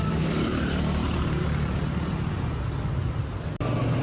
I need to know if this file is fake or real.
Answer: real